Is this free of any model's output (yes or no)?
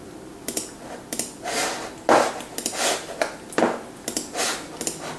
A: yes